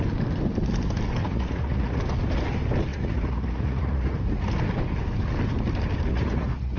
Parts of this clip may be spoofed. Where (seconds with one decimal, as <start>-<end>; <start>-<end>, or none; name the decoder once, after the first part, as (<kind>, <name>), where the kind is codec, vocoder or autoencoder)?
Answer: 1.2-2.0 (vocoder, Vocos); 2.9-4.2; 6.1-6.8